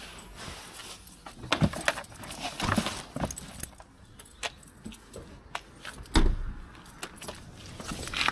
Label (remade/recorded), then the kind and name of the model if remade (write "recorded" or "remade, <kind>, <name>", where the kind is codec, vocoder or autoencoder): recorded